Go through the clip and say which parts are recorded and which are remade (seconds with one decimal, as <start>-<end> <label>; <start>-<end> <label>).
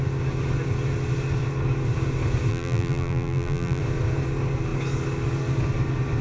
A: 0.0-2.5 recorded; 2.5-3.8 remade; 3.8-6.2 recorded